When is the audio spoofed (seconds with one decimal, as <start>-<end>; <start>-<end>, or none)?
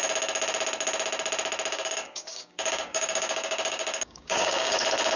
1.7-4.8